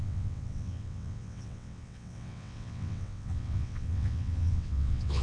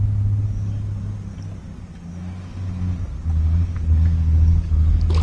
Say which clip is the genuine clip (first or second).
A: second